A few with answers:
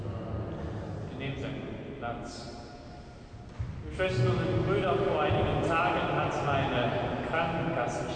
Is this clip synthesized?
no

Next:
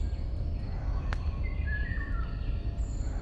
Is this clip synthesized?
no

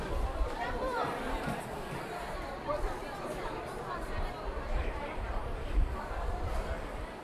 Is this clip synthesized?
yes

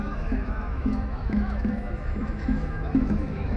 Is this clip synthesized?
yes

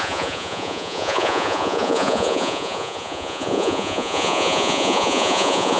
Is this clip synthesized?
yes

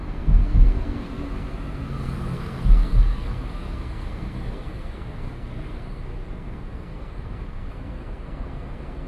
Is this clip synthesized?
yes